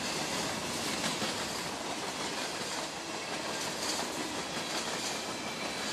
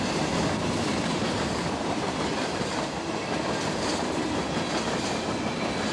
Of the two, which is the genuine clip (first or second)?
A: first